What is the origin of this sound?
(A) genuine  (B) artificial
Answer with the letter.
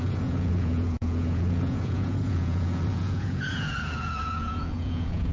B